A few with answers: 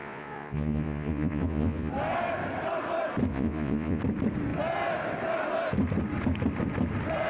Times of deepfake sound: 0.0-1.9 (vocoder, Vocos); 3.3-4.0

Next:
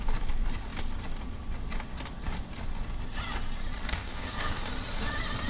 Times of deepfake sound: 3.9-4.7 (codec, SNAC)

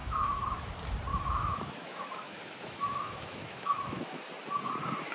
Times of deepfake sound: 0.0-0.7 (autoencoder, DAC-VAE); 1.1-4.2

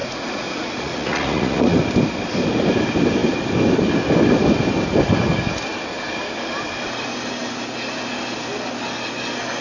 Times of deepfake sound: 0.0-1.8 (vocoder, Vocos)

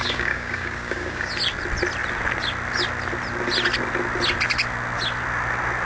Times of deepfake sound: 0.0-1.3 (codec, DAC)

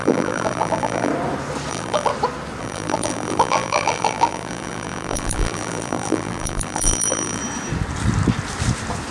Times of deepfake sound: 0.0-1.1 (vocoder, BigVGAN v2); 1.7-2.1; 2.6-7.4